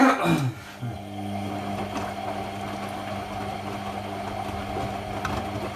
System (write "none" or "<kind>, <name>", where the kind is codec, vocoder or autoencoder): none